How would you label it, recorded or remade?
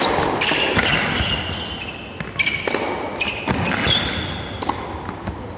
recorded